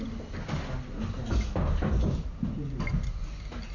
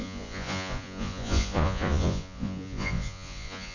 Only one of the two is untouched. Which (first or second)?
first